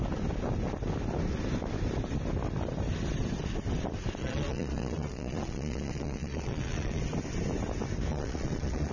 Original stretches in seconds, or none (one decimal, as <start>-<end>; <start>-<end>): 0.0-4.2; 7.0-8.1